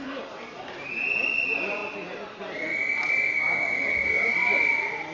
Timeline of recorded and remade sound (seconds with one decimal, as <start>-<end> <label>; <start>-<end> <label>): 0.0-3.4 recorded; 3.4-4.3 remade; 4.3-5.1 recorded